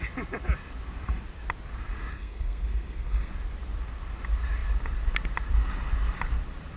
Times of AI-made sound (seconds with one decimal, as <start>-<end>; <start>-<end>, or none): 2.1-3.3